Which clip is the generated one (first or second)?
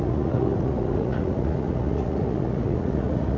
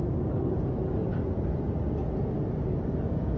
first